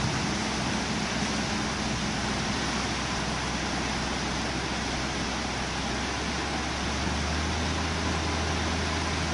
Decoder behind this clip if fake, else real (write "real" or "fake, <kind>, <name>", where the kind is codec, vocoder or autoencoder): real